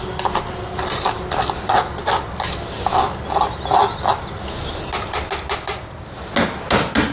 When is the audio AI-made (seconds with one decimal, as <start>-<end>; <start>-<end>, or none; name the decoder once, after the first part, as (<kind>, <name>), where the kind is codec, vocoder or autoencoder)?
none